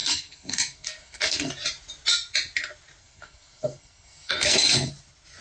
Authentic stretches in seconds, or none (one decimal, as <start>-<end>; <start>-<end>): 1.5-3.0; 4.9-5.4